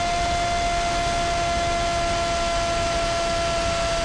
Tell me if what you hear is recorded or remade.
recorded